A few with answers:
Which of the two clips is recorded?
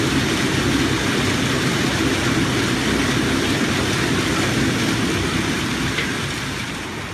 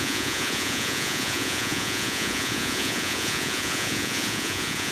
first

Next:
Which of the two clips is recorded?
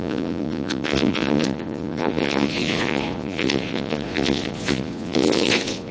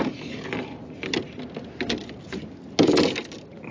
second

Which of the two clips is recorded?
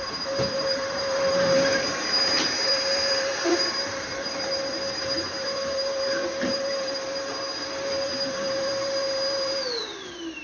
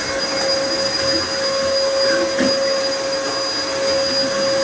second